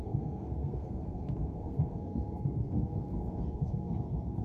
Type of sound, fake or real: fake